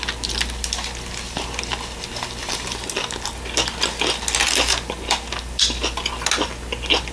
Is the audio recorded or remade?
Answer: recorded